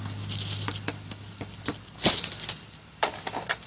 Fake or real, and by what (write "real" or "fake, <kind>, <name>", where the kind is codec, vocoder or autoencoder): real